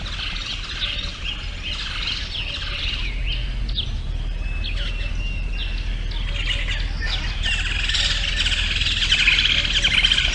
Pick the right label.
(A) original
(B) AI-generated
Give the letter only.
A